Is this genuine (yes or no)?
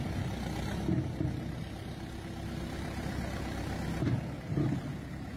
yes